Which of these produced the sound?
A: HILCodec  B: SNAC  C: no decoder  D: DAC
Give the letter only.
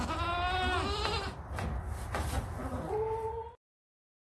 C